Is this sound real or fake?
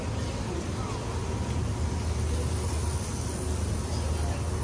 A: real